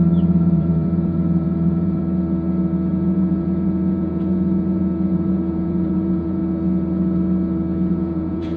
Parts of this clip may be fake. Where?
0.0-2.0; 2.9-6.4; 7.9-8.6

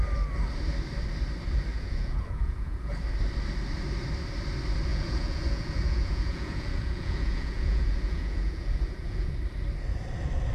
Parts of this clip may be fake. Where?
1.7-2.9; 4.9-9.3

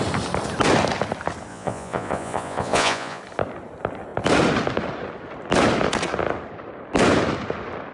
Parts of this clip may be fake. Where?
1.5-3.2

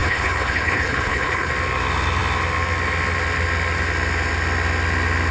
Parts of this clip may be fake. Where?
0.0-1.5

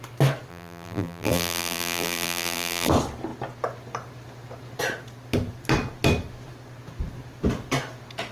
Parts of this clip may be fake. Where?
0.5-2.9

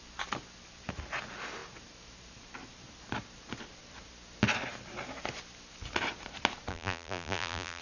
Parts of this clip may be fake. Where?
6.7-7.8